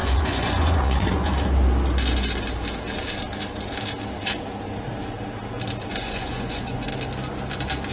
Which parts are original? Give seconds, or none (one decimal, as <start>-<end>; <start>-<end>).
1.3-5.9; 6.9-7.9